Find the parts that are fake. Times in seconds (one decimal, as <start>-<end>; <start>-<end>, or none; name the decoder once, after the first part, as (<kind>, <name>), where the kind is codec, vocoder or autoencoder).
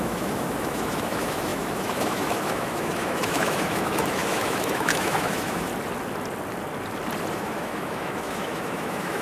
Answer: 0.0-5.7 (autoencoder, DAC-VAE); 7.3-9.2